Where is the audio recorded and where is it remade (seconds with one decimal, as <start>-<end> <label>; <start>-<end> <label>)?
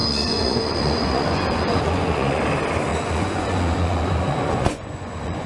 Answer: 0.0-2.4 remade; 2.4-2.9 recorded; 2.9-5.5 remade